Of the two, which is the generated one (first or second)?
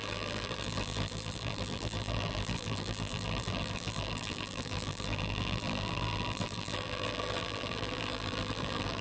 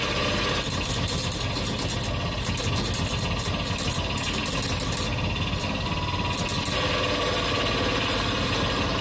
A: first